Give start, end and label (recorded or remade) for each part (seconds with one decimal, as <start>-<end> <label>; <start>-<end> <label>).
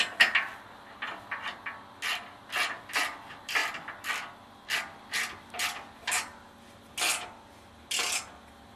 0.0-8.8 recorded